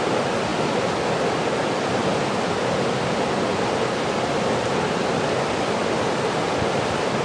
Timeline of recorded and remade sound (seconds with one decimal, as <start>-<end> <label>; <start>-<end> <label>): 0.0-7.2 recorded